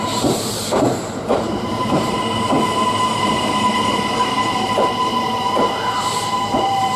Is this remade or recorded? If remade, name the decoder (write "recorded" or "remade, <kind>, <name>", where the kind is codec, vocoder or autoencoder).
remade, vocoder, BigVGAN v2